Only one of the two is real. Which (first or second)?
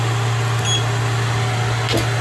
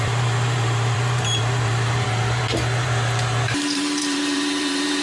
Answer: first